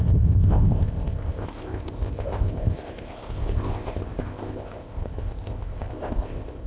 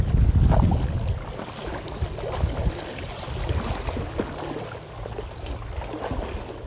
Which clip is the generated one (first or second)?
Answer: first